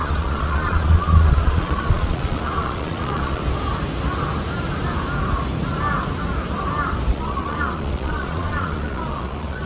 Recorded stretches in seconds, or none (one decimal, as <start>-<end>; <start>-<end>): 3.4-7.1